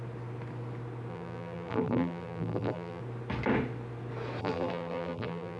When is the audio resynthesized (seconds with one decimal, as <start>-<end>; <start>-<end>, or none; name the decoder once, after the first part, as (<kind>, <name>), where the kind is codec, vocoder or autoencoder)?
1.1-3.0 (vocoder, BigVGAN v2); 4.4-5.6